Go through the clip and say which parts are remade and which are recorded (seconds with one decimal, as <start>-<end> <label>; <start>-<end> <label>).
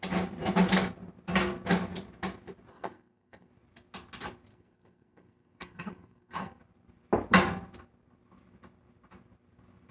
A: 0.0-2.7 recorded; 2.7-3.5 remade; 3.5-4.5 recorded; 4.5-6.6 remade; 6.6-9.9 recorded